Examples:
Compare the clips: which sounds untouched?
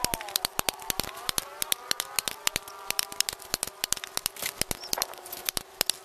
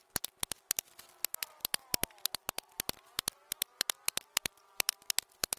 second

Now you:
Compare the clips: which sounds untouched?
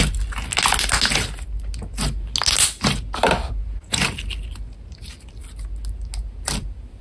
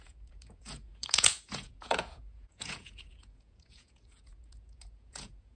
first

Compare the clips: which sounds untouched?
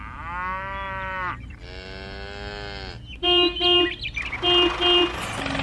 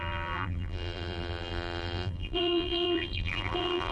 first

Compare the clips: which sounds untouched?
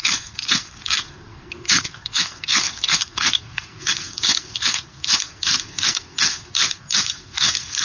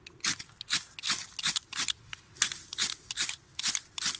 second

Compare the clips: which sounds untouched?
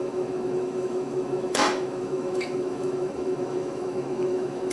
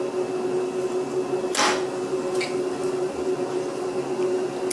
second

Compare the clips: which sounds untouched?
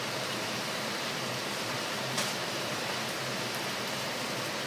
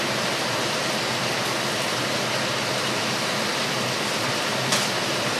second